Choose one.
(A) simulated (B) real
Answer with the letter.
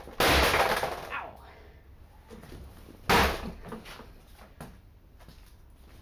B